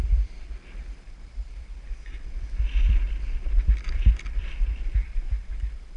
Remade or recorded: recorded